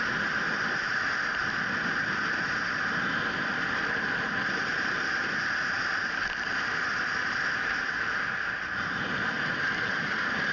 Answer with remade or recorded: remade